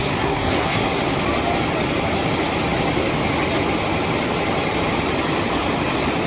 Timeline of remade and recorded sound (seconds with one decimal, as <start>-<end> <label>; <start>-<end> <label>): 0.0-1.0 remade; 1.0-6.3 recorded